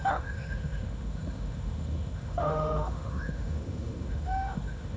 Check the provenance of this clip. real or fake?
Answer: fake